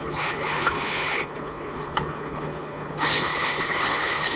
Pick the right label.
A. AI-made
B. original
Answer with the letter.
A